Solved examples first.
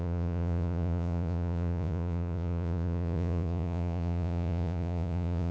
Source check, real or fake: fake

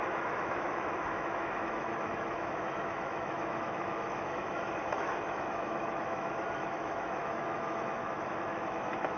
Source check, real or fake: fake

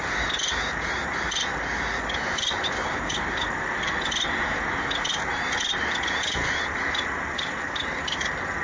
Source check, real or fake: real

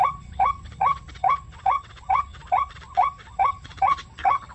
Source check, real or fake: fake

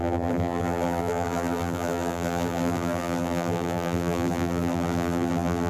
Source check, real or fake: fake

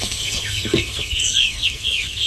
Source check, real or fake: fake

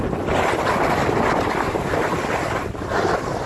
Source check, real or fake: real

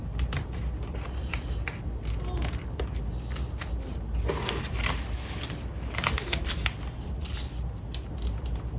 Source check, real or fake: real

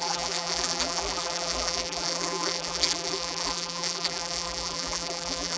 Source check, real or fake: fake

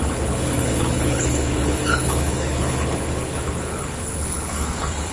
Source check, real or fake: fake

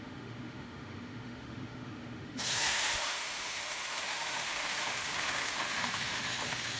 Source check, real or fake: fake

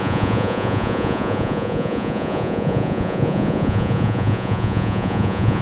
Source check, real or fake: fake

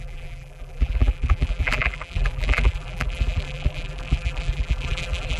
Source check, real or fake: fake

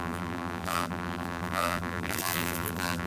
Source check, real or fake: fake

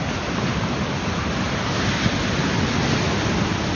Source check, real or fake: real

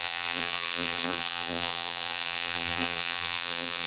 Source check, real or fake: fake